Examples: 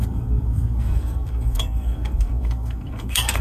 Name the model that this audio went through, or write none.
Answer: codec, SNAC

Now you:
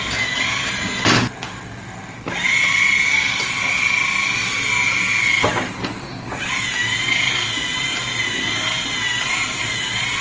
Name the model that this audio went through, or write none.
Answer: none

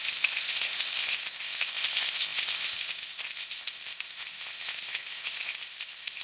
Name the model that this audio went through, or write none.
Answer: codec, ZipCodec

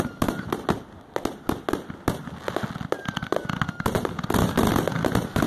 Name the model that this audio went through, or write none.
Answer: none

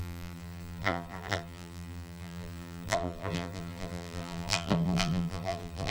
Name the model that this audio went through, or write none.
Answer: vocoder, BigVGAN v2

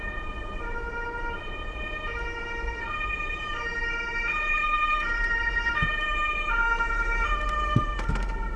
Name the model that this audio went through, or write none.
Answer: vocoder, BigVGAN v2